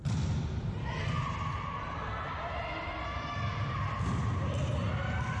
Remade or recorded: recorded